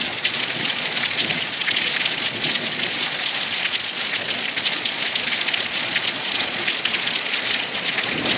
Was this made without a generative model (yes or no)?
no